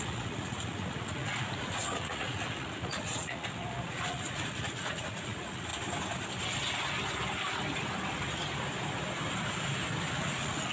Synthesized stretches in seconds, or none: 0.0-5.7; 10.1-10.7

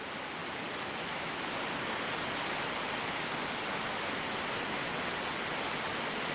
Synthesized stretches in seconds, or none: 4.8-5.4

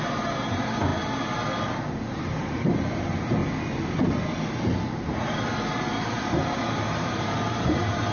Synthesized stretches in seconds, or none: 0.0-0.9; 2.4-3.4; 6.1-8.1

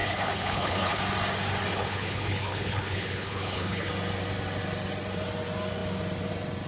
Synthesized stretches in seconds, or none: 0.0-1.0; 1.7-3.9

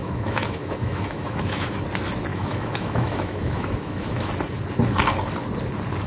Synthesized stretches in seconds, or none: 0.0-1.8; 2.3-4.3

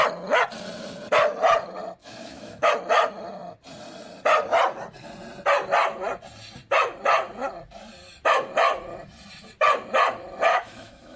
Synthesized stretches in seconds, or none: 2.0-2.7; 10.5-11.2